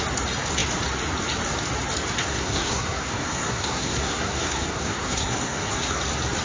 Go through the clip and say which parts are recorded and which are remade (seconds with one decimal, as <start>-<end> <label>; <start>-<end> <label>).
0.0-2.2 recorded; 2.2-6.0 remade; 6.0-6.4 recorded